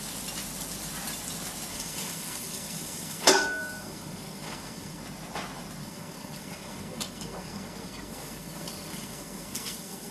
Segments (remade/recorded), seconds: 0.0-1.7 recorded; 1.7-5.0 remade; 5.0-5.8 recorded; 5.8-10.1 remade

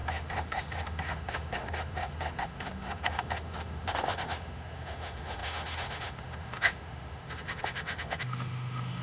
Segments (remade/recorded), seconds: 0.0-9.0 remade

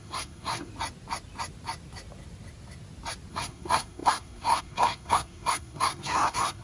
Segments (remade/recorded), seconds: 0.0-0.7 remade; 0.7-3.3 recorded; 3.3-6.6 remade

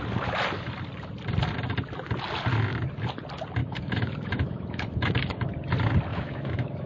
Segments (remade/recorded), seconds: 0.0-3.6 recorded; 3.6-5.5 remade; 5.5-6.1 recorded; 6.1-6.9 remade

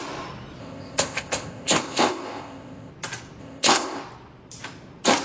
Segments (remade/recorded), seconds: 0.0-0.6 recorded; 0.6-2.9 remade; 2.9-3.4 recorded; 3.4-4.0 remade; 4.0-5.2 recorded